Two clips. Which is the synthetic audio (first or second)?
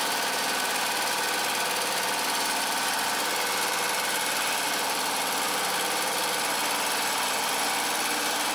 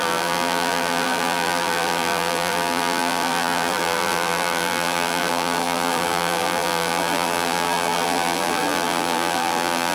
second